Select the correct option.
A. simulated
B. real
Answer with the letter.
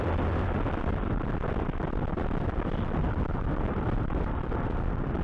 A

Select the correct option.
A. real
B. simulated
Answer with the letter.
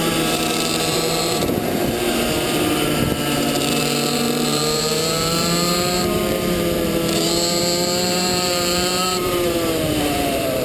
B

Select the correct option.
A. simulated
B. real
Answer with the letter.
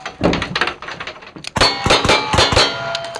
B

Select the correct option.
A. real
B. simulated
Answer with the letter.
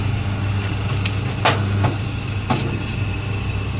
A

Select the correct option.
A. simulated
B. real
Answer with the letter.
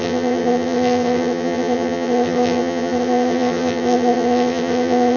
A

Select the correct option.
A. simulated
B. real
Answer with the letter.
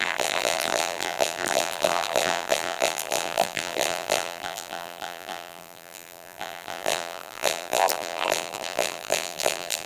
A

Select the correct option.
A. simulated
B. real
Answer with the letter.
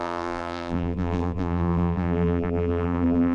A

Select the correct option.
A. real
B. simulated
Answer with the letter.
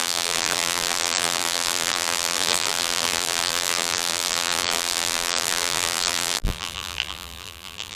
B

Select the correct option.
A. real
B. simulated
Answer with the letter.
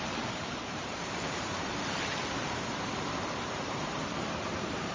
B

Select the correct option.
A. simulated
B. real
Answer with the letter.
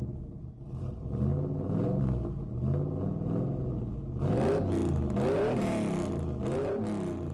B